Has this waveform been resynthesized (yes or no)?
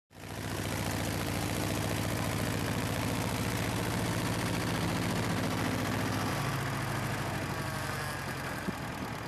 no